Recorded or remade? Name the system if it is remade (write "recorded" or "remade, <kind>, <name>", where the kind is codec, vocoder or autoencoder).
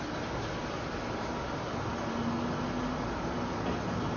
recorded